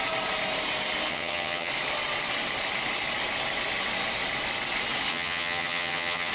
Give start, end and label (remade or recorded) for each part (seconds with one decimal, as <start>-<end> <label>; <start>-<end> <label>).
0.0-1.1 recorded; 1.1-1.7 remade; 1.7-5.1 recorded; 5.1-6.3 remade